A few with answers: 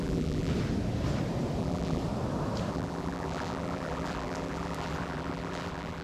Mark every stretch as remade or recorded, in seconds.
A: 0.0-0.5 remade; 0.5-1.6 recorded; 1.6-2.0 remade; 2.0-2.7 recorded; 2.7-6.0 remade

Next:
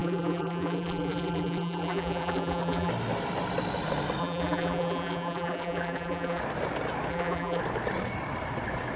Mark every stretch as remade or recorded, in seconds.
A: 0.0-2.9 remade; 2.9-4.2 recorded; 4.2-6.4 remade; 6.4-7.1 recorded; 7.1-7.6 remade; 7.6-9.0 recorded

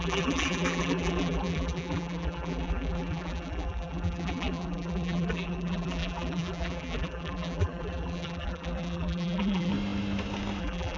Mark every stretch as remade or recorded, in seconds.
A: 0.0-9.7 remade; 9.7-10.6 recorded; 10.6-11.0 remade

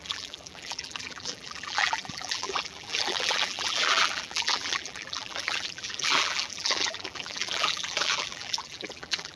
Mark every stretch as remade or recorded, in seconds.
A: 0.0-9.4 remade

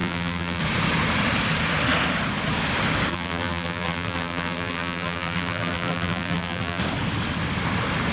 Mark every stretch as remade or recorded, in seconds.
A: 0.0-0.6 remade; 0.6-3.1 recorded; 3.1-6.8 remade; 6.8-8.1 recorded

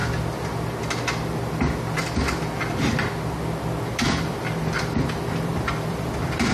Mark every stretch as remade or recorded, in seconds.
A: 0.0-3.8 recorded; 3.8-6.5 remade